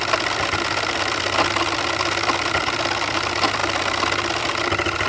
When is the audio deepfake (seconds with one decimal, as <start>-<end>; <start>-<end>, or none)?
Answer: none